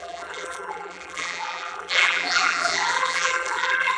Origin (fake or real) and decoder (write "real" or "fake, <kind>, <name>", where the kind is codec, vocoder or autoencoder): fake, vocoder, BigVGAN v2